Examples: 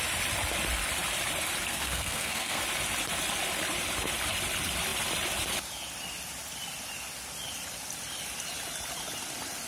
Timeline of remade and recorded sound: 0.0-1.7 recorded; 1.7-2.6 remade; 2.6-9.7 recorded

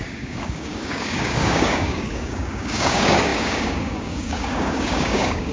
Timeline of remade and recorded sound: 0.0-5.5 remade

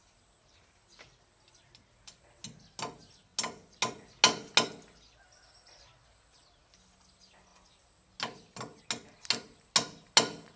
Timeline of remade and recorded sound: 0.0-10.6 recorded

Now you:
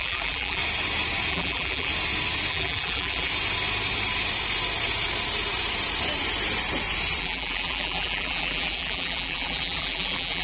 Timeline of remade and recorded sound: 0.0-0.6 remade; 0.6-1.3 recorded; 1.3-1.9 remade; 1.9-2.5 recorded; 2.5-3.3 remade; 3.3-7.2 recorded; 7.2-10.4 remade

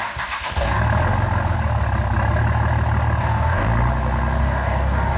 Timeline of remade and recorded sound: 0.0-0.8 remade; 0.8-3.2 recorded; 3.2-3.7 remade; 3.7-4.4 recorded; 4.4-5.2 remade